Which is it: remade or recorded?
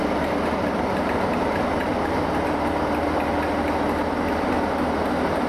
recorded